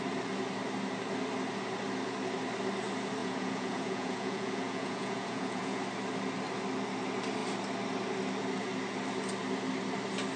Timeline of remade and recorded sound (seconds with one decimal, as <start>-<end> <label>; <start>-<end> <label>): 0.0-3.2 recorded; 3.2-5.8 remade; 5.8-10.4 recorded

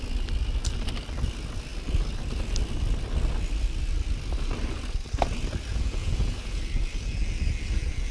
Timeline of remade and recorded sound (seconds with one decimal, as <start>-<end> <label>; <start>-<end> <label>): 0.0-5.7 recorded; 5.7-6.6 remade; 6.6-8.1 recorded

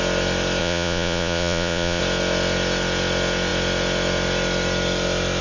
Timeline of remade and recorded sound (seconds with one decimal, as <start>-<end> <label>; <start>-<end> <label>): 0.0-0.6 recorded; 0.6-2.0 remade; 2.0-5.4 recorded

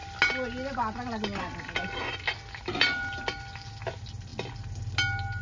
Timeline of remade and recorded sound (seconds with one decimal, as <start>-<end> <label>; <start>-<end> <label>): 0.0-5.4 recorded

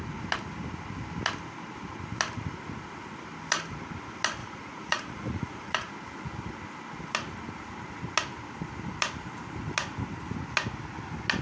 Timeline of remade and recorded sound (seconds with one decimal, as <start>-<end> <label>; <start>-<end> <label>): 0.0-4.4 recorded; 4.4-5.9 remade; 5.9-11.4 recorded

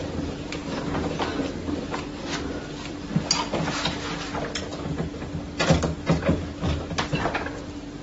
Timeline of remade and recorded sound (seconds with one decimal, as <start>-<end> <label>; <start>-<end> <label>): 0.0-8.0 recorded

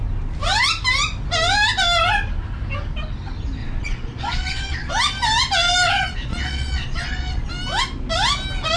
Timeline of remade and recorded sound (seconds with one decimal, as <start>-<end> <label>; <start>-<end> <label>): 0.0-3.6 recorded; 3.6-4.9 remade; 4.9-6.3 recorded; 6.3-7.5 remade; 7.5-8.8 recorded

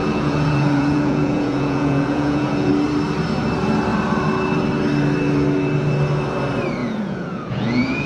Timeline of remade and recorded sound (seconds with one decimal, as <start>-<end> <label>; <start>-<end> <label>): 0.0-2.7 remade; 2.7-6.8 recorded; 6.8-8.1 remade